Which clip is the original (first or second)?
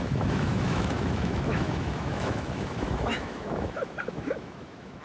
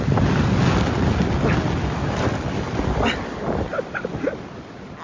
second